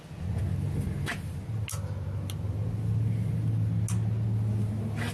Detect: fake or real real